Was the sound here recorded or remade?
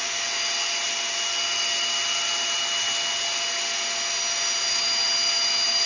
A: recorded